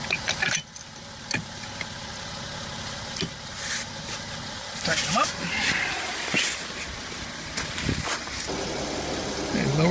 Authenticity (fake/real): real